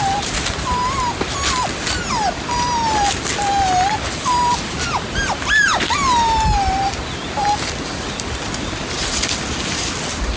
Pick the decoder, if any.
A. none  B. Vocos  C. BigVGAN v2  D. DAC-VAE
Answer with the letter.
A